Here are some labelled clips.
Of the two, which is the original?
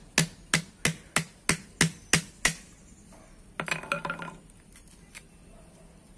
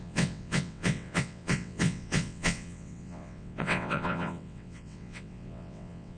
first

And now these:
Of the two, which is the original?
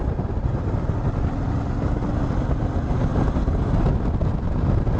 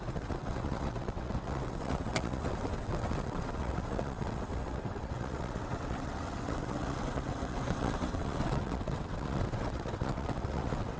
first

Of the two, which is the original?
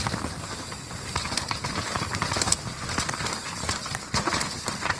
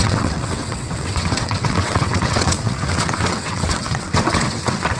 first